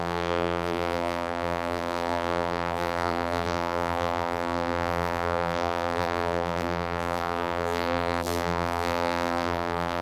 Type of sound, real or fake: fake